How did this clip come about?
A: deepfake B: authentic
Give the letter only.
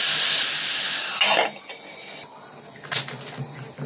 B